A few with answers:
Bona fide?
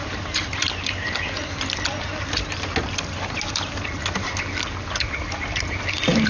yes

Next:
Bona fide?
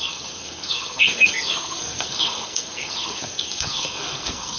no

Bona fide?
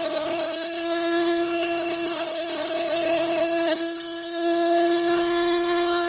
no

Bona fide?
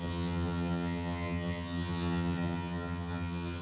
no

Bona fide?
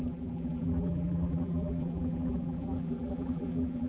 no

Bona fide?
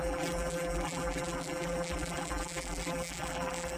no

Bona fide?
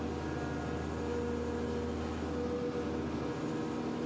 yes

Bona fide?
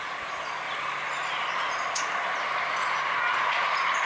yes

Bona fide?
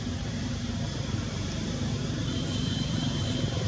no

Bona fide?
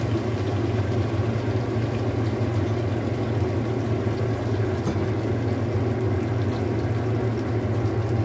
yes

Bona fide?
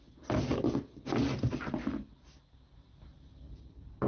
yes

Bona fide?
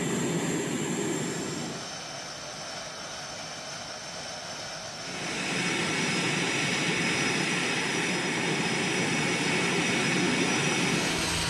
yes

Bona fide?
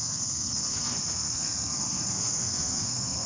no